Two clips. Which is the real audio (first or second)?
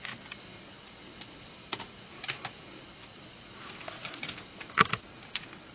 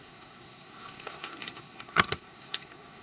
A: first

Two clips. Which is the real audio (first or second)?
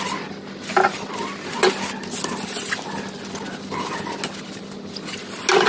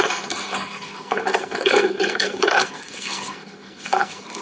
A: first